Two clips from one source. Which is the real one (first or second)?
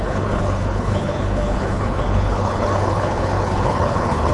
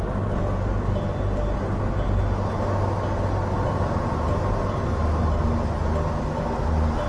second